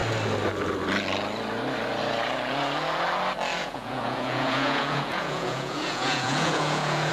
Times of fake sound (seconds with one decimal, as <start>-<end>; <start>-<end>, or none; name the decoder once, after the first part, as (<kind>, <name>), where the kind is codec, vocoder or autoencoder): 3.6-7.1 (vocoder, Vocos)